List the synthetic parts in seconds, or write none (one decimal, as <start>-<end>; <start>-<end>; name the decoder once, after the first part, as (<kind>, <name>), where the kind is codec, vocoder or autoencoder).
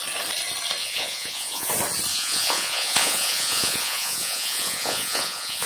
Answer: 0.8-1.7 (vocoder, Vocos); 2.1-5.7